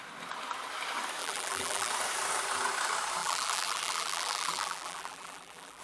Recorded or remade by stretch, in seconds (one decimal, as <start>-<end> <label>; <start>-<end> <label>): 0.0-1.2 recorded; 1.2-1.9 remade; 1.9-3.2 recorded; 3.2-5.8 remade

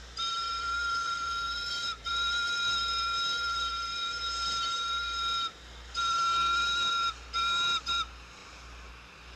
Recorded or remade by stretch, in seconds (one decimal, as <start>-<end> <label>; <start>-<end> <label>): 0.0-0.5 recorded; 0.5-2.1 remade; 2.1-9.4 recorded

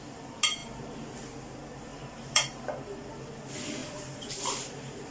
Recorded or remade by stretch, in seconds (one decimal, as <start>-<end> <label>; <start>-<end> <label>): 0.0-1.9 recorded; 1.9-3.1 remade; 3.1-3.8 recorded; 3.8-4.3 remade; 4.3-5.1 recorded

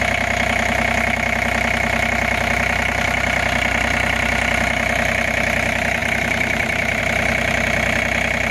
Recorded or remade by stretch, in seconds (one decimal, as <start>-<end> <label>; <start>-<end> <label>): 0.0-6.0 recorded; 6.0-7.0 remade; 7.0-8.5 recorded

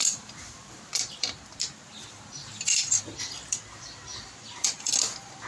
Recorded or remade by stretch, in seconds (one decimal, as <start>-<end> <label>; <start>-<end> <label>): 0.0-5.5 remade

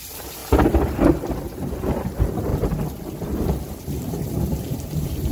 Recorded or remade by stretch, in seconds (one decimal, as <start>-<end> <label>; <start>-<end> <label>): 0.0-0.4 remade; 0.4-1.7 recorded; 1.7-2.5 remade; 2.5-3.8 recorded; 3.8-5.3 remade

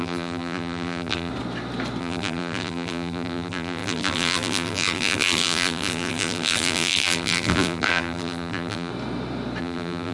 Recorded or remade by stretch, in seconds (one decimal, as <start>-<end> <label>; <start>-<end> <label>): 0.0-1.3 remade; 1.3-2.0 recorded; 2.0-8.9 remade; 8.9-9.6 recorded; 9.6-10.1 remade

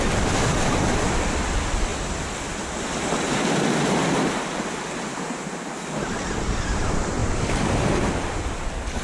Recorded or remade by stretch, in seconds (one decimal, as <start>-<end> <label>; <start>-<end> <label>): 0.0-1.9 recorded; 1.9-4.6 remade; 4.6-7.2 recorded; 7.2-9.0 remade